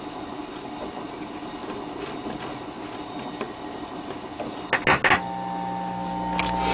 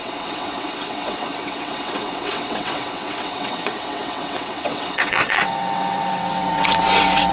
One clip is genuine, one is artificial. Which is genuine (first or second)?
first